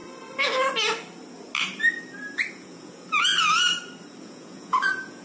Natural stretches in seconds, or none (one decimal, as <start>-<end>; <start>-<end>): 0.0-2.5; 3.3-4.2